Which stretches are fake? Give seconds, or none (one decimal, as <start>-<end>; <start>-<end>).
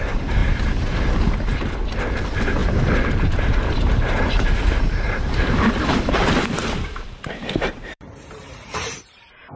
0.0-0.4; 2.2-2.6; 3.1-9.6